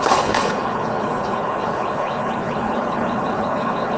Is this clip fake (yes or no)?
yes